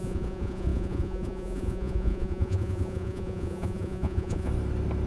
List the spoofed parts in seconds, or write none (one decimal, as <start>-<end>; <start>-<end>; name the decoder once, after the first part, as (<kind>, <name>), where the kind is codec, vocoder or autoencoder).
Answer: 0.0-4.5 (vocoder, Vocos)